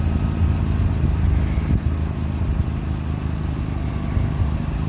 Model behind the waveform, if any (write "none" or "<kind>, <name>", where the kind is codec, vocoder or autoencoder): none